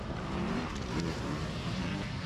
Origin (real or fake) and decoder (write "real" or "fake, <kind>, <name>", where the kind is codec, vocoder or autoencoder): fake, vocoder, BigVGAN v2